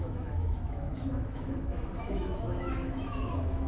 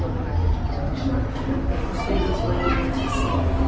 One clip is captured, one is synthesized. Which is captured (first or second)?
second